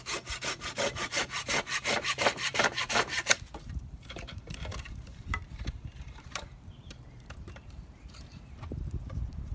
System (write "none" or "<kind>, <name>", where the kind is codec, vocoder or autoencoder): vocoder, BigVGAN v2